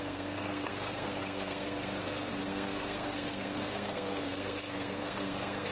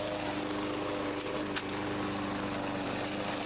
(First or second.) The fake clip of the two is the first